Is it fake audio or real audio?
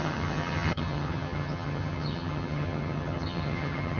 fake